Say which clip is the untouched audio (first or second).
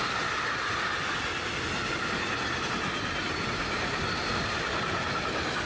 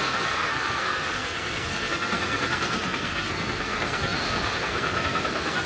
first